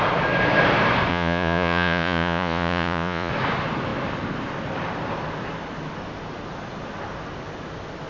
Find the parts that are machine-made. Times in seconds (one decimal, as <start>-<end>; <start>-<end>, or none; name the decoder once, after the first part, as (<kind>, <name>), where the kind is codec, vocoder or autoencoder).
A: 1.1-3.3 (vocoder, Vocos)